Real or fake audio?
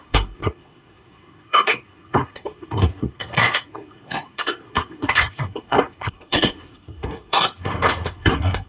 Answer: fake